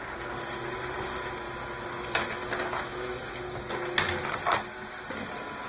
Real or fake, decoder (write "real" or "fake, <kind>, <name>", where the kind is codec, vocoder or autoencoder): real